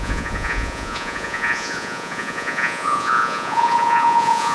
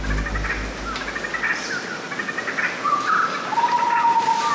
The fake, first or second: first